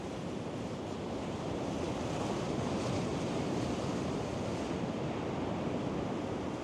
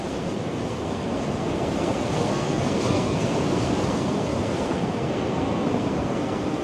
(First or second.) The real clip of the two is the first